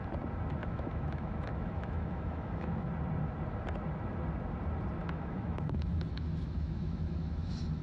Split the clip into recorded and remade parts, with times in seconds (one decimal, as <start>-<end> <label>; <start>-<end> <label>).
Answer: 0.0-0.6 recorded; 0.6-2.9 remade; 2.9-5.0 recorded; 5.0-7.8 remade